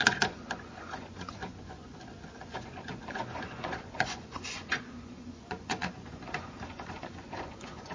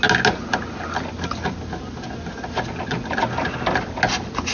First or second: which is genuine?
second